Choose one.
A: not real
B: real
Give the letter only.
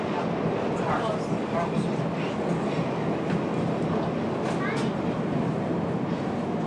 B